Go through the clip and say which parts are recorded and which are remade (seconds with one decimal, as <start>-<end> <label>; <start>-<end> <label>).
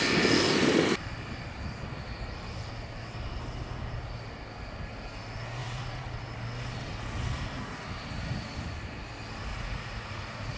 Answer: 0.0-5.6 recorded; 5.6-6.3 remade; 6.3-9.5 recorded; 9.5-10.6 remade